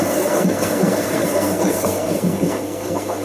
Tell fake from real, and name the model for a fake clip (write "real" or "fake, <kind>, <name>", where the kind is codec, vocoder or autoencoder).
fake, codec, SNAC